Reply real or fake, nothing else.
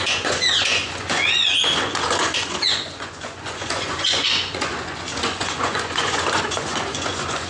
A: fake